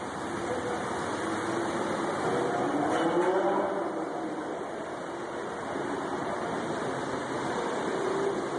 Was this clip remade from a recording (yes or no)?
no